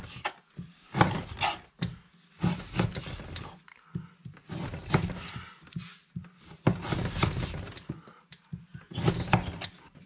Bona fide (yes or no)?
yes